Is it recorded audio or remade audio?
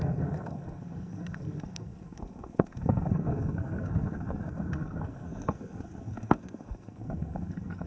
remade